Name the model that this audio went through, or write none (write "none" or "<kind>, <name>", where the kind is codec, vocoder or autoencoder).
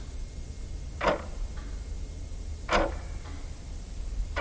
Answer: none